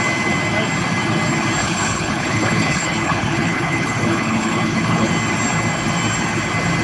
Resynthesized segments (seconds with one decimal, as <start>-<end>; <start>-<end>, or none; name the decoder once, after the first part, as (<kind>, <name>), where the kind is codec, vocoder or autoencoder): 1.6-5.1 (codec, HILCodec)